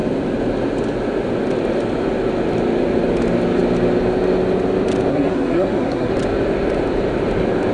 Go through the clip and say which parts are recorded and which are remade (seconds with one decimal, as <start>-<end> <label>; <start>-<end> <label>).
0.0-5.1 recorded; 5.1-6.1 remade; 6.1-7.7 recorded